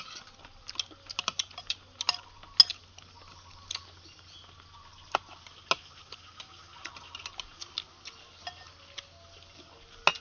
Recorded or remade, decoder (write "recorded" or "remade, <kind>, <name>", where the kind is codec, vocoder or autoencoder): recorded